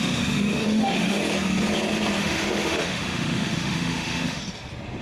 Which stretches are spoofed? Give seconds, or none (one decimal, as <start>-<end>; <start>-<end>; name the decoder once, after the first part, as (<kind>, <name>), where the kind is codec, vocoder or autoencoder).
0.0-1.2 (autoencoder, DAC-VAE); 2.2-4.4